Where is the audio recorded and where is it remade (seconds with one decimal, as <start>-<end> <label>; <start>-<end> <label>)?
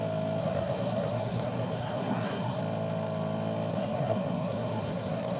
0.0-0.4 recorded; 0.4-2.6 remade; 2.6-3.7 recorded; 3.7-5.4 remade